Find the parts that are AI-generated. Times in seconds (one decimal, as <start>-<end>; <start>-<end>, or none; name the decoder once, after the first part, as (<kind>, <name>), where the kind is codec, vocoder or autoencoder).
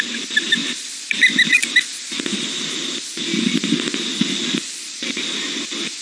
0.0-1.9 (vocoder, BigVGAN v2); 4.4-6.0